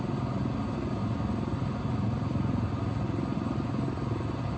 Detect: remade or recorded recorded